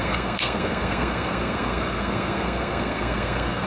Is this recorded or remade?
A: remade